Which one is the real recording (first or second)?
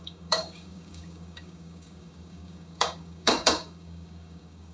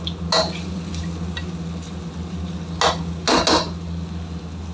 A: second